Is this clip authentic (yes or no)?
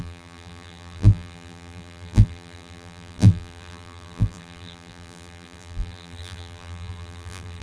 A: no